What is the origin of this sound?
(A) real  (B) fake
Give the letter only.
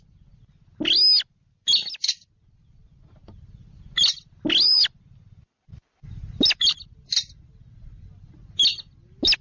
A